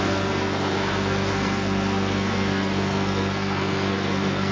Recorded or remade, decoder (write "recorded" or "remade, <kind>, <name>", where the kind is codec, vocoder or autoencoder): remade, codec, SNAC